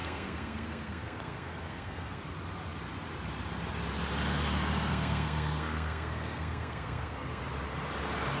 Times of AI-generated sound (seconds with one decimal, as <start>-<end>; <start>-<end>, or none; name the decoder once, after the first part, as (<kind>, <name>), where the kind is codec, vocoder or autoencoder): 0.0-2.2 (codec, SNAC); 4.9-7.4